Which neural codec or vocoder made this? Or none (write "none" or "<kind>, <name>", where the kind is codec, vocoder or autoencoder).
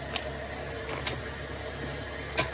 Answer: none